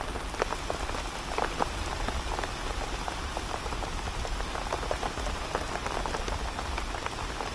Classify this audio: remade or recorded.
recorded